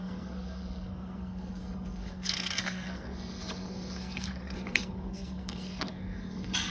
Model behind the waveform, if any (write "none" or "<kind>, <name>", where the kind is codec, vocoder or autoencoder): codec, SNAC